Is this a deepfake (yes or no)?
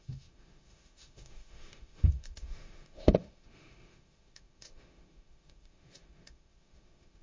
yes